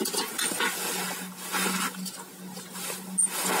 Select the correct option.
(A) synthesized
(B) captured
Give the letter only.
B